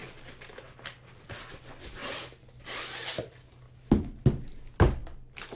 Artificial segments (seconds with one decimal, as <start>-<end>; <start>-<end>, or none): none